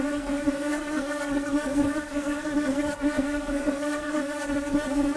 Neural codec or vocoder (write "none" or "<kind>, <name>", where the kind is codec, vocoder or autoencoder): codec, SNAC